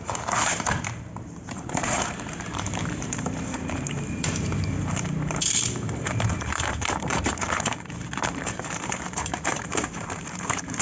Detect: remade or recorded remade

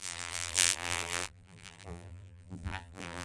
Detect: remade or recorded remade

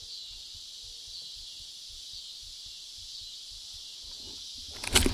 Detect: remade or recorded recorded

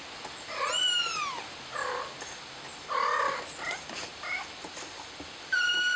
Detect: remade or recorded recorded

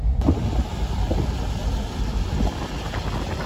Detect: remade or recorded recorded